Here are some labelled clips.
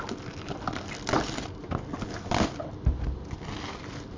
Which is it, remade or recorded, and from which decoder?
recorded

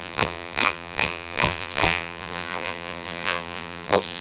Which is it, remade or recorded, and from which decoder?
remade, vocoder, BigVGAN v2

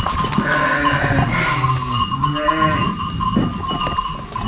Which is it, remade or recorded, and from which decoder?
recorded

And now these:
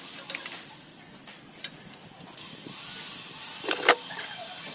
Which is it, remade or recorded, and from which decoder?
recorded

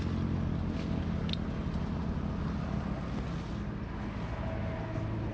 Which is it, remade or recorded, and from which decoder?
recorded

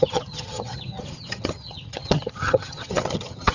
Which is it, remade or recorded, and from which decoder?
remade, vocoder, HiFi-GAN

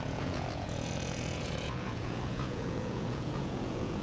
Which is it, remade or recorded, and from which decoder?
remade, vocoder, Vocos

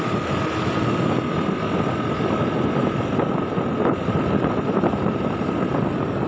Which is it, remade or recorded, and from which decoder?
recorded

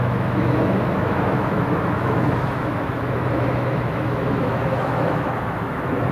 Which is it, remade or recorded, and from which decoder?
remade, autoencoder, DAC-VAE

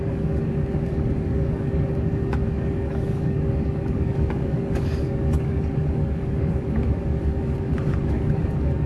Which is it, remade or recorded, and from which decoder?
remade, codec, DAC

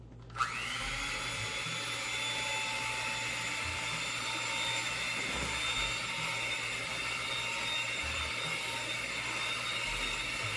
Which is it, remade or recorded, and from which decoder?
recorded